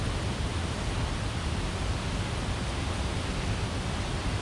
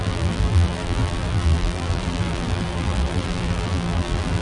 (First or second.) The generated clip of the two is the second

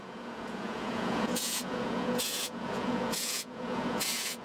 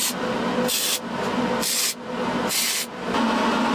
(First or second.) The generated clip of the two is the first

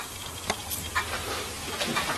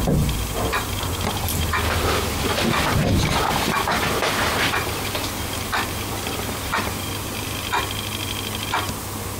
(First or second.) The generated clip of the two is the first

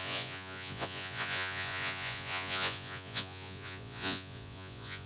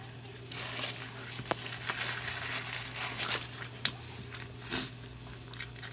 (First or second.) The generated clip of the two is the first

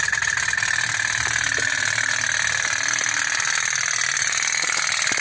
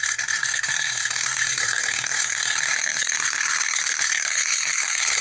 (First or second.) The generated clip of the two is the second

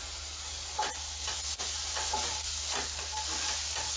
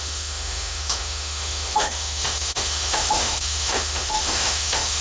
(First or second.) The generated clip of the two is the second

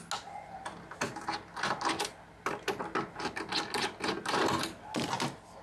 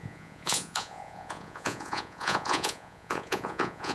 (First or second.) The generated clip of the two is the second